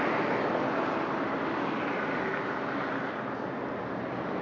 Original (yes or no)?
yes